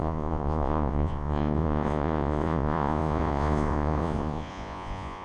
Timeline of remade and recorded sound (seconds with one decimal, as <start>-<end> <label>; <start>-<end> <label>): 0.0-5.2 remade